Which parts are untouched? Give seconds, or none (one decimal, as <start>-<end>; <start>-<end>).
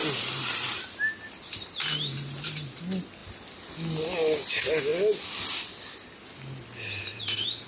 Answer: 2.8-7.7